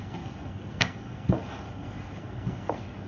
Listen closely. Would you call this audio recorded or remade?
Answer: remade